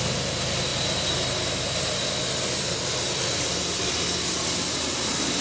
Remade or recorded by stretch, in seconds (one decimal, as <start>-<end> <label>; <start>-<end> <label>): 0.0-0.7 recorded; 0.7-3.9 remade; 3.9-5.4 recorded